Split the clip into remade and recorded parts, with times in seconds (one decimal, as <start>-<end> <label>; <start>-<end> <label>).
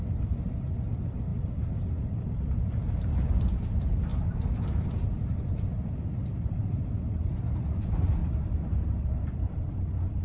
0.0-1.3 remade; 1.3-2.9 recorded; 2.9-4.1 remade; 4.1-4.6 recorded; 4.6-10.2 remade